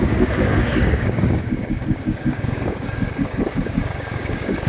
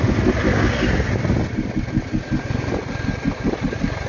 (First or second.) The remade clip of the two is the first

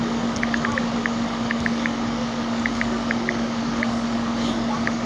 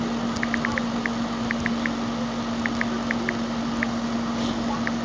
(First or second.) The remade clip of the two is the first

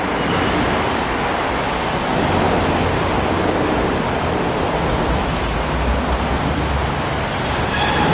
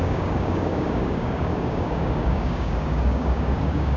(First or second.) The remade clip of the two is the second